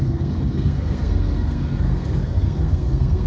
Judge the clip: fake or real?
fake